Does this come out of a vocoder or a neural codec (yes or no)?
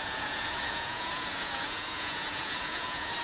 yes